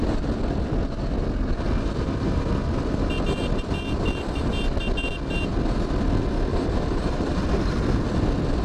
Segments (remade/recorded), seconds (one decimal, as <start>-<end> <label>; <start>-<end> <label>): 0.0-6.5 recorded; 6.5-7.4 remade; 7.4-8.6 recorded